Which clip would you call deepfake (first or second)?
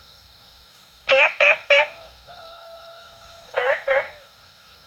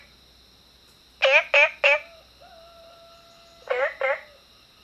first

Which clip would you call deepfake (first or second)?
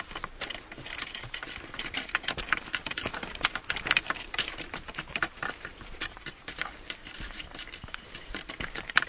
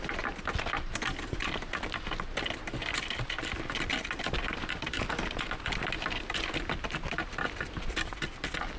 first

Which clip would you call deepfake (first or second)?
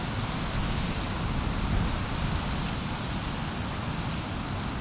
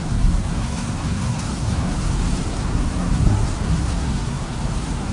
second